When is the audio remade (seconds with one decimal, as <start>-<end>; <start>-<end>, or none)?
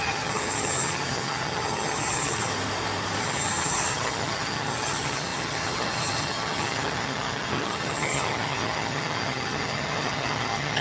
0.0-2.5; 3.2-10.8